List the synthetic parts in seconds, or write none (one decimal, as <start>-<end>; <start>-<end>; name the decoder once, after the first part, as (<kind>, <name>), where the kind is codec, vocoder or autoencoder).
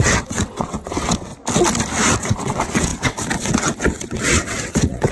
0.0-1.3 (vocoder, WaveNeXt); 2.2-5.1